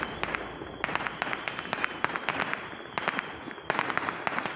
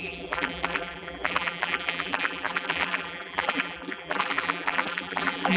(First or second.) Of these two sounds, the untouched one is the first